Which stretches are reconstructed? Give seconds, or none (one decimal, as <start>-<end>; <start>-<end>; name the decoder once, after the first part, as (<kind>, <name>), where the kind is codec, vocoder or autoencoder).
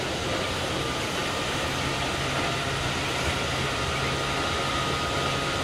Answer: none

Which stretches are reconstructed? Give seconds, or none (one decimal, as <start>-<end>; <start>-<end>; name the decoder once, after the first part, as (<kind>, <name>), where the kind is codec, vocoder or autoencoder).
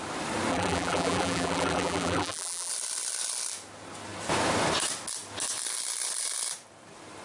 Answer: 0.5-2.7 (vocoder, BigVGAN v2)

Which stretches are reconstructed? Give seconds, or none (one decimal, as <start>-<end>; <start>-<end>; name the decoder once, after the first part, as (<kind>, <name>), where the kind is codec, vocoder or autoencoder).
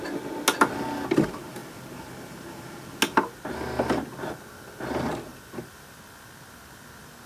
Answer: 5.3-5.9 (vocoder, BigVGAN v2)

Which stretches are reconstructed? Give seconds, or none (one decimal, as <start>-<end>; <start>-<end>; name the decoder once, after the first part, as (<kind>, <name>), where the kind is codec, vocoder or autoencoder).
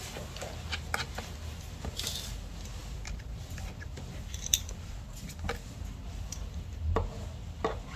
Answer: 2.8-6.8 (vocoder, BigVGAN v2)